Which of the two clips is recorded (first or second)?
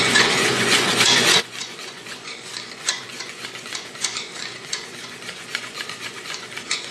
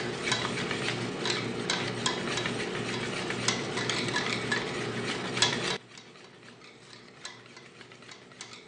second